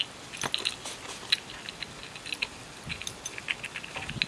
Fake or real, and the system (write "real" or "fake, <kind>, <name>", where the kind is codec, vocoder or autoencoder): real